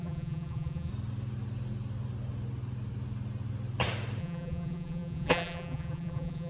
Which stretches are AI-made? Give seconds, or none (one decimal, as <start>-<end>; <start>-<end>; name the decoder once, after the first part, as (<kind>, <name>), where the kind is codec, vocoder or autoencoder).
0.0-0.9 (vocoder, BigVGAN v2); 4.2-6.5